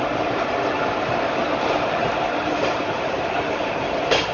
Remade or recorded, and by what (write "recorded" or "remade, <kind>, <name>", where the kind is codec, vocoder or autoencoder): remade, vocoder, BigVGAN v2